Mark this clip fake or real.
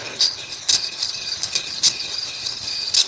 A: fake